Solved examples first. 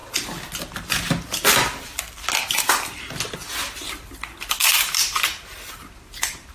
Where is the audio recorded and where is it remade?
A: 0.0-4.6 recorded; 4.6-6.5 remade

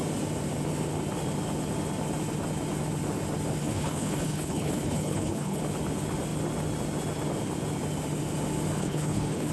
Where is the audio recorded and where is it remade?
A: 0.0-3.6 recorded; 3.6-5.6 remade; 5.6-8.8 recorded; 8.8-9.5 remade

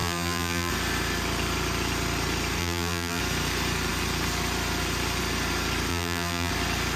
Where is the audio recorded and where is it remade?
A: 0.0-0.7 remade; 0.7-2.6 recorded; 2.6-3.2 remade; 3.2-5.9 recorded; 5.9-6.5 remade; 6.5-7.0 recorded

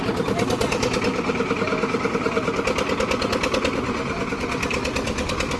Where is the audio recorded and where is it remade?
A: 0.0-1.1 recorded; 1.1-2.1 remade; 2.1-5.6 recorded